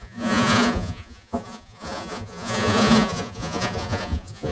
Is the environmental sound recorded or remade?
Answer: remade